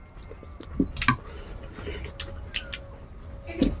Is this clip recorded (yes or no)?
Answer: yes